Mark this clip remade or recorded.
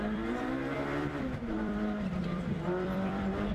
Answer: remade